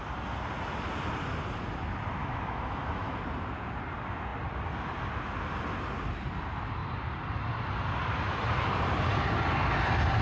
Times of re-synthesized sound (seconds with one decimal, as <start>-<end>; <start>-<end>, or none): 2.2-3.2